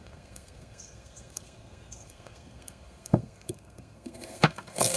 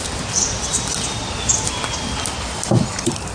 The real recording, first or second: second